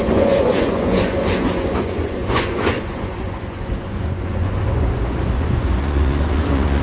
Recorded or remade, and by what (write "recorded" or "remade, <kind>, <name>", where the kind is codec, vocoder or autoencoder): remade, vocoder, Vocos